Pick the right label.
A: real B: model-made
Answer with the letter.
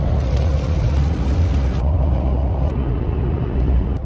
B